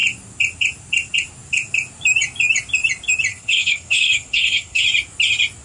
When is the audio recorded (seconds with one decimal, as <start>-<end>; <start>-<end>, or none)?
0.0-3.3; 4.8-5.6